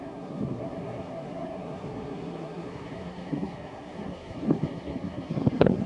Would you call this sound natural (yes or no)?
no